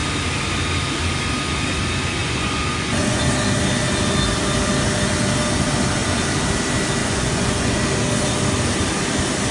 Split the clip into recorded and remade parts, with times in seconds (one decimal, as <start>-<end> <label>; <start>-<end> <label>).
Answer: 0.0-2.2 recorded; 2.2-3.2 remade; 3.2-7.0 recorded; 7.0-7.8 remade; 7.8-9.5 recorded